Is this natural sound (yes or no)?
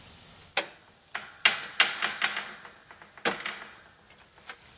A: yes